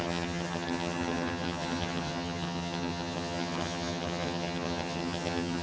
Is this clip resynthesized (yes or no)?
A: yes